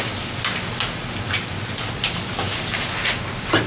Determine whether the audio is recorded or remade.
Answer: recorded